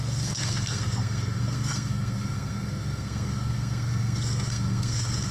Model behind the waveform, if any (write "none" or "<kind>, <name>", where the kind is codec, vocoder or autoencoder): codec, SNAC